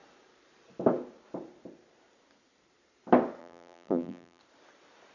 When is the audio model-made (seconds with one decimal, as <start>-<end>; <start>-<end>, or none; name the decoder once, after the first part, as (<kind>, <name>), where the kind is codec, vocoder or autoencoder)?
3.4-4.4 (vocoder, BigVGAN v2)